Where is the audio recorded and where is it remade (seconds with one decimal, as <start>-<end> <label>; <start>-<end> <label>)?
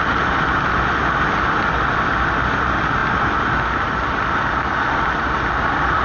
0.0-6.0 recorded